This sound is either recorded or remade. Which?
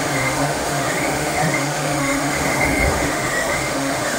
remade